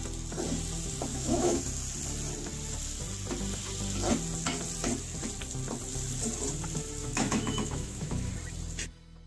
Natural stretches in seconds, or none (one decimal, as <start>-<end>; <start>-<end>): 0.0-1.1; 1.6-7.0; 8.3-9.3